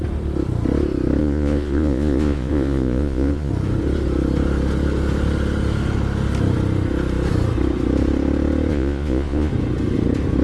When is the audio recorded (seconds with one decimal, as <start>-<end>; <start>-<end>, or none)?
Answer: 0.0-1.2; 3.5-8.7; 9.5-10.4